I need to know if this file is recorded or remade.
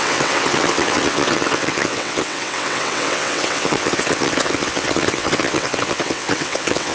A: remade